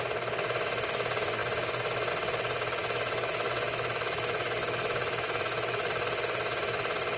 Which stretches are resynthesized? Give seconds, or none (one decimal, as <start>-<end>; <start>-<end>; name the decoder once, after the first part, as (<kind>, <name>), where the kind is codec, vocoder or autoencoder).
2.8-5.9 (autoencoder, DAC-VAE)